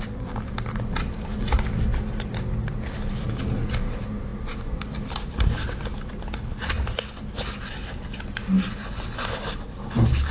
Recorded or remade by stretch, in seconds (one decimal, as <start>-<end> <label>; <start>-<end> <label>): 0.0-10.3 recorded